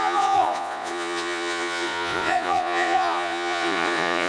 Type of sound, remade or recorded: remade